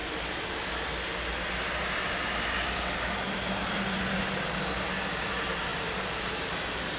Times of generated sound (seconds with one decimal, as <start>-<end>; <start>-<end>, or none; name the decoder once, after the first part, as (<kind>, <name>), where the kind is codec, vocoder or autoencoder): none